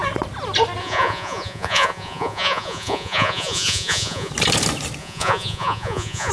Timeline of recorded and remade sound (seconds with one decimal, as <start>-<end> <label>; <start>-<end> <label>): 0.0-0.8 recorded; 0.8-4.3 remade; 4.3-5.0 recorded; 5.0-6.3 remade